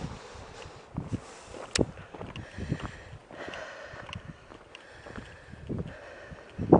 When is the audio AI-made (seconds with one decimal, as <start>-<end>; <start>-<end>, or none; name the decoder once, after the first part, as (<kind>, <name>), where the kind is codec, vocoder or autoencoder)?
none